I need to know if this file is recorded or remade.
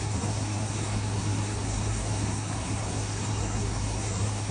remade